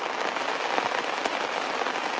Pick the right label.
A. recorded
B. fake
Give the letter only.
A